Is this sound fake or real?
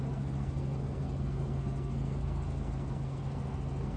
fake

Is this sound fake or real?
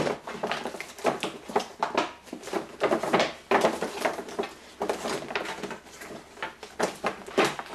real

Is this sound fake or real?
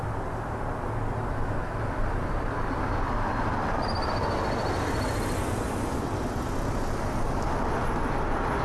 real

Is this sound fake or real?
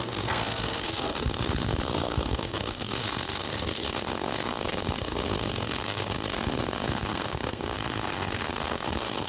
fake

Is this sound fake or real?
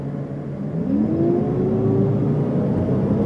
real